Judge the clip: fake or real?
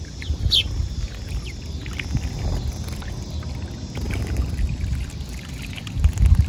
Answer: real